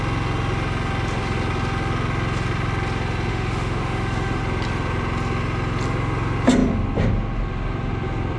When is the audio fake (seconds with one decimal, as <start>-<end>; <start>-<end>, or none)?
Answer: 3.3-4.4